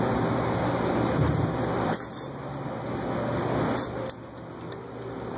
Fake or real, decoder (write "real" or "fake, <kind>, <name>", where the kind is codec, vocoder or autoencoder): real